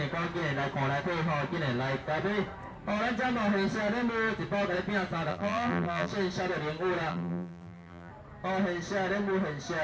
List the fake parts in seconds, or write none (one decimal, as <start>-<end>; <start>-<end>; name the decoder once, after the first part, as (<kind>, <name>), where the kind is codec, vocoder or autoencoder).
5.3-6.1 (vocoder, BigVGAN v2); 7.1-8.1